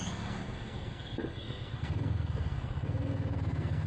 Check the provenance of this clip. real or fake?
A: fake